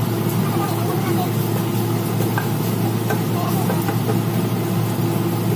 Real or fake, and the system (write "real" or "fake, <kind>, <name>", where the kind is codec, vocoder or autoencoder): real